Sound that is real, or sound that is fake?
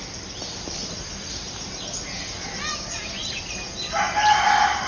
real